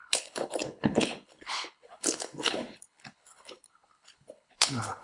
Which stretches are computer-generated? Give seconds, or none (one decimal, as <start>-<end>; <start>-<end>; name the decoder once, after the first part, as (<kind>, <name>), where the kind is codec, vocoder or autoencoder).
0.0-5.0 (codec, HILCodec)